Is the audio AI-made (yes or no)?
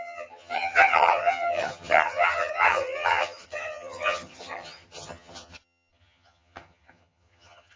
yes